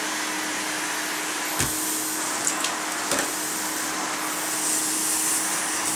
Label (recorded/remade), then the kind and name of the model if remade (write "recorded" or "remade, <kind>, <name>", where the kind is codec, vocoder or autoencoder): recorded